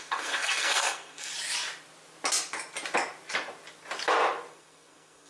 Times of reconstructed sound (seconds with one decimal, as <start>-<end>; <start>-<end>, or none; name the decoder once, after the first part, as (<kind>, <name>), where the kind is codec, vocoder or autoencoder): 0.0-1.3 (codec, SNAC); 4.5-5.3